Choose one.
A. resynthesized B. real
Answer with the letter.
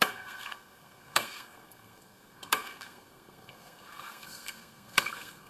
A